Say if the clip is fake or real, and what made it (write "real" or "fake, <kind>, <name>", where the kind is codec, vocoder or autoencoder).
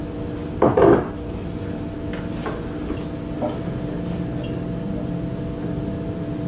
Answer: real